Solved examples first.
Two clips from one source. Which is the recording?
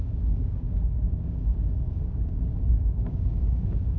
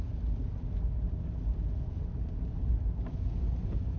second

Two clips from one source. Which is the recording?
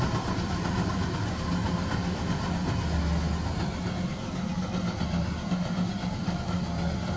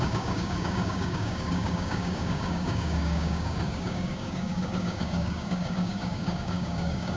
first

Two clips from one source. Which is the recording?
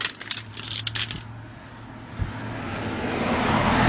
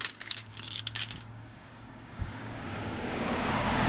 first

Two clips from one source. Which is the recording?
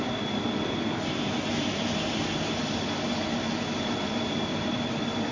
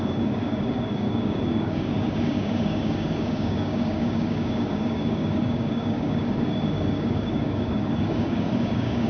first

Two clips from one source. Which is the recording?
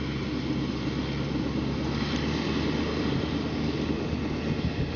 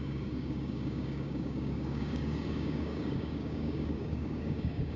first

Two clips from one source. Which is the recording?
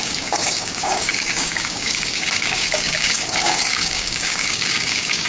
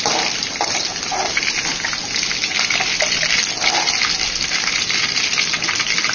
second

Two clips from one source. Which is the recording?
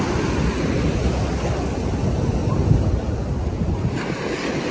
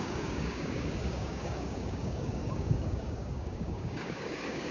first